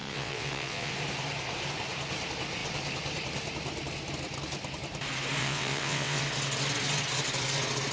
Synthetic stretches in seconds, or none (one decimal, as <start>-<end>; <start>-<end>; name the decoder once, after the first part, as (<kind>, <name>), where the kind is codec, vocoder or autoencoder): 0.0-0.9 (vocoder, WaveNeXt); 5.4-6.2